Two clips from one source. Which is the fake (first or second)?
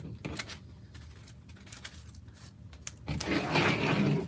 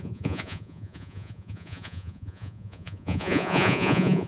second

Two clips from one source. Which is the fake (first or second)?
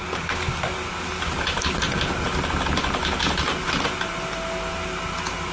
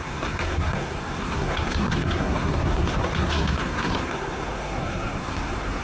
second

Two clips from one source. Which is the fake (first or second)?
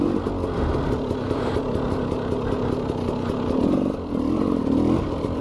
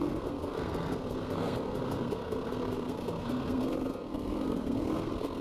second